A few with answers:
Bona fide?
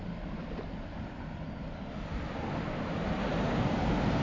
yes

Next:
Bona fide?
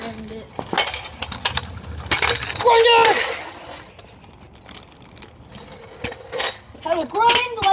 yes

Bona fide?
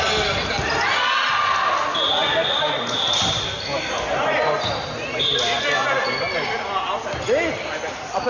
yes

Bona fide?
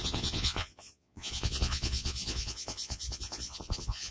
no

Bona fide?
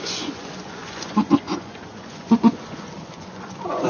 no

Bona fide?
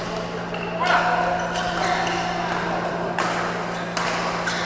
yes